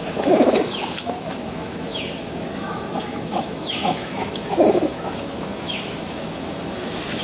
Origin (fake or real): fake